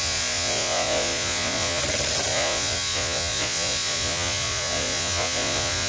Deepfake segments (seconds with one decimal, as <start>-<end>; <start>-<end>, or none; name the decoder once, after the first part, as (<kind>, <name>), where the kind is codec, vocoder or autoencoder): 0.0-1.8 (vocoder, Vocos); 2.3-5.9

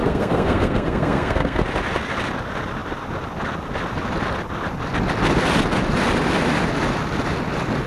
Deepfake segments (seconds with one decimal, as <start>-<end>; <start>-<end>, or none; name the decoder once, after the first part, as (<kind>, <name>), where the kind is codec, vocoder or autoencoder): 0.0-1.6 (codec, SNAC)

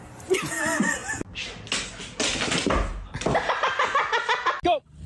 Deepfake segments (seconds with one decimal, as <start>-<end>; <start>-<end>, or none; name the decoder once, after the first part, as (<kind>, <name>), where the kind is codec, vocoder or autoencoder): none

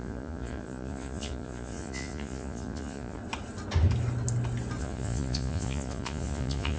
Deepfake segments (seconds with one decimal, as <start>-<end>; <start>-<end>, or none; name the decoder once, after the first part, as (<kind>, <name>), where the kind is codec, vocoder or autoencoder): 0.0-3.2 (vocoder, Vocos); 4.8-6.8

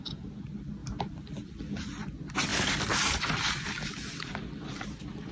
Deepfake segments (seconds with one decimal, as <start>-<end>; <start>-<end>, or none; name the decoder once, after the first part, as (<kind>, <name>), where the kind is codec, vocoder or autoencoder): 0.8-2.0 (vocoder, BigVGAN v2); 3.8-5.3

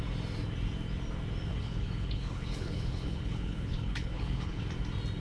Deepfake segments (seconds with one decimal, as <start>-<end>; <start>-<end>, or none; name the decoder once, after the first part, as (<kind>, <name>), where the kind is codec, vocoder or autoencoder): 1.5-4.6 (codec, HILCodec)

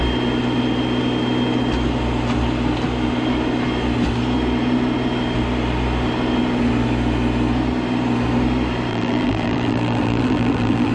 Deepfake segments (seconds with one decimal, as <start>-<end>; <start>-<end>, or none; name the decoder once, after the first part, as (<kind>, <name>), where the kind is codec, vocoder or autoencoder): 8.9-10.9 (vocoder, BigVGAN v2)